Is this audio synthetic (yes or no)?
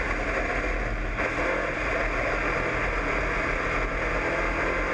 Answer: no